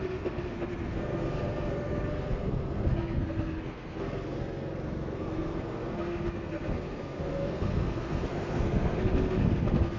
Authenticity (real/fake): fake